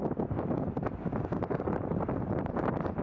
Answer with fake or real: real